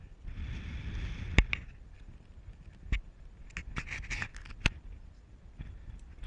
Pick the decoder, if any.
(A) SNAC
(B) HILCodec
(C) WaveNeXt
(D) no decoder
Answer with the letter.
D